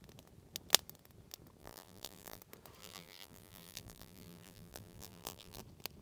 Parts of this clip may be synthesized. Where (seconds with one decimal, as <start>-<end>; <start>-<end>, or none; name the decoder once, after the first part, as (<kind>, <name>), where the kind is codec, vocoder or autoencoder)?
1.6-2.4 (vocoder, BigVGAN v2); 2.8-5.6